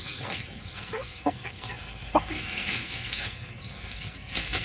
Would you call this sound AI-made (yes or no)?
yes